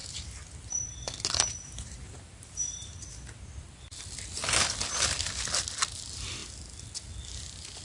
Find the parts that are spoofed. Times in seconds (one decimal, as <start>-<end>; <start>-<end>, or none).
none

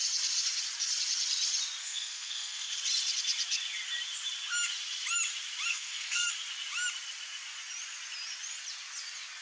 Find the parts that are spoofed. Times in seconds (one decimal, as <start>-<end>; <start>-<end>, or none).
1.8-2.7; 5.7-6.3

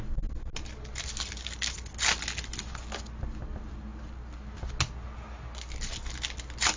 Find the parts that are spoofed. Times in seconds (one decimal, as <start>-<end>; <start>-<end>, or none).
none

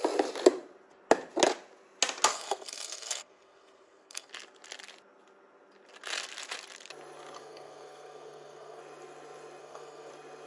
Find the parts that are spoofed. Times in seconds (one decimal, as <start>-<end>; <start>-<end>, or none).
2.3-4.3; 7.4-8.8; 9.6-10.1

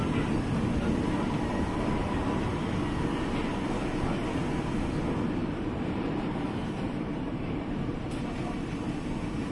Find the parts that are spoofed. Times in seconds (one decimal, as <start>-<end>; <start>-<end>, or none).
5.4-8.9